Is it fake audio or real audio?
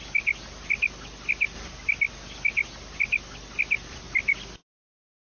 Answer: real